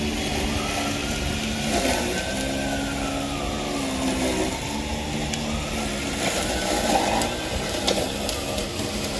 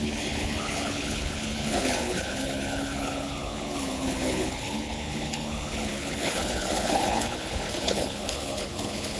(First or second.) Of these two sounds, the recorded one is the first